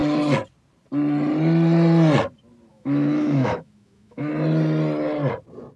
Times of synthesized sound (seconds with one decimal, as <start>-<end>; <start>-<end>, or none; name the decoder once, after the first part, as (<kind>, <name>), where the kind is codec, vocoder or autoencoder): 2.7-4.3 (autoencoder, DAC-VAE)